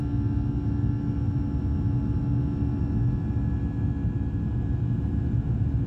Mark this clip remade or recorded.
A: recorded